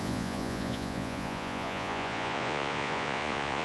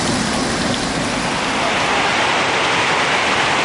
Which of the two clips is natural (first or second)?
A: second